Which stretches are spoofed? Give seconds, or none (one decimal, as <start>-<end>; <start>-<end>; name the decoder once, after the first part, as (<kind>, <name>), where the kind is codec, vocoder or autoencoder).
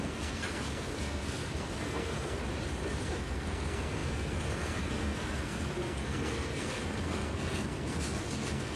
0.0-2.4 (codec, SNAC); 3.0-8.8